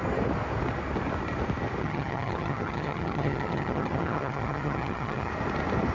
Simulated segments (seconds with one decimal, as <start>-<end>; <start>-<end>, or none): 1.8-5.3